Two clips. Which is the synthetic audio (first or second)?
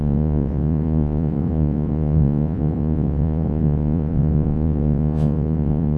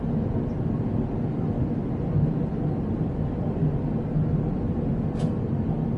first